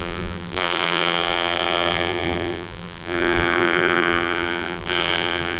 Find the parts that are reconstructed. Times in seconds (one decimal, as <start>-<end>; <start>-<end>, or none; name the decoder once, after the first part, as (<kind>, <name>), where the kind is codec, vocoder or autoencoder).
0.0-5.6 (vocoder, BigVGAN v2)